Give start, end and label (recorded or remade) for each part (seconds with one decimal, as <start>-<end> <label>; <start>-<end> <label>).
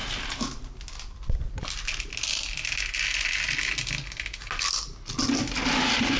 0.0-6.2 recorded